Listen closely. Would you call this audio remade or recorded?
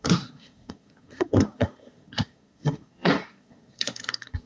remade